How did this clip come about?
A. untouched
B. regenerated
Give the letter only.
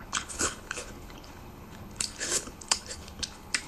B